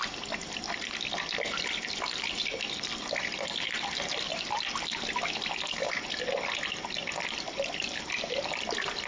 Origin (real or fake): real